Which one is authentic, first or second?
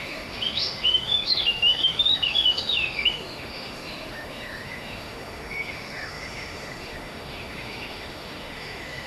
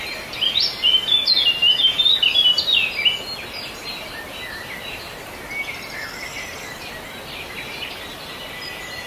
second